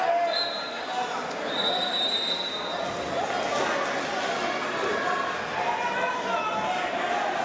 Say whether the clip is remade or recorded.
recorded